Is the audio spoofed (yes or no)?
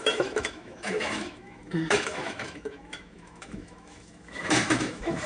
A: yes